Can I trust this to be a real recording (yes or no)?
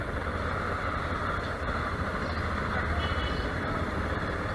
yes